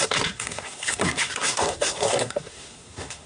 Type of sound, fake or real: fake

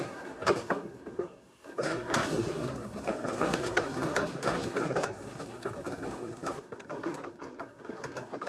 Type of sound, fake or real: fake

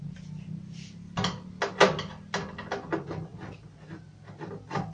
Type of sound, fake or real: real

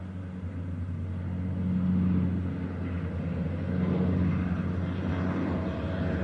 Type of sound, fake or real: real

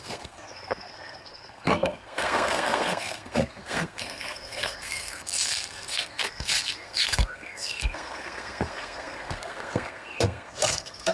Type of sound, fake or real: fake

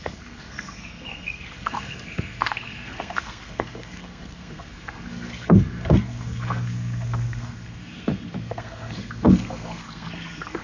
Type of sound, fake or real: fake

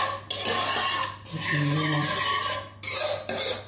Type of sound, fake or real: real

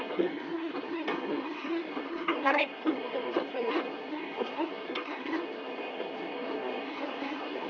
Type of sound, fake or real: fake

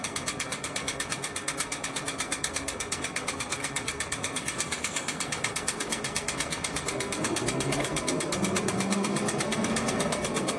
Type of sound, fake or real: fake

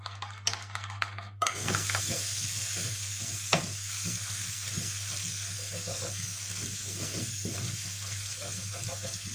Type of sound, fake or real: fake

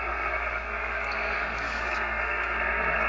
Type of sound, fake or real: fake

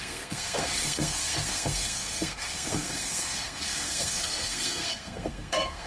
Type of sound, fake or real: fake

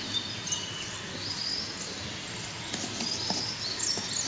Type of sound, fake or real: real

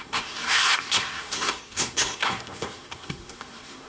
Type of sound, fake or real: fake